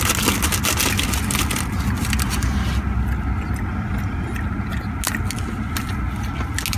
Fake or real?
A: real